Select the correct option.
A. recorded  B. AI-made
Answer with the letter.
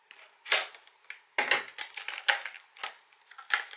A